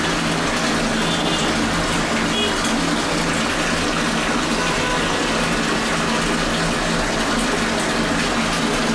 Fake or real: real